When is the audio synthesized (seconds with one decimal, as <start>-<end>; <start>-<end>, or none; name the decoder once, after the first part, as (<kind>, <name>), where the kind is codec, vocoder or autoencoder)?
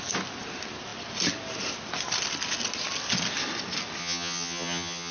4.0-5.1 (vocoder, HiFi-GAN)